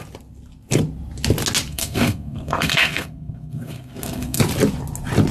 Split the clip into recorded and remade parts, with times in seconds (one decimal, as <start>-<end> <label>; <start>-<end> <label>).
0.0-1.7 recorded; 1.7-4.4 remade; 4.4-5.3 recorded